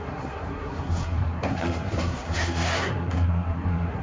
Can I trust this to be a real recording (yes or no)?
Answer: no